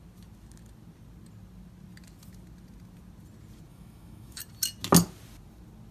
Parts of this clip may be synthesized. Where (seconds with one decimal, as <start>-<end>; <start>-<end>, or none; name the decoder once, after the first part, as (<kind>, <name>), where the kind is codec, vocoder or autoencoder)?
3.7-4.4 (autoencoder, DAC-VAE)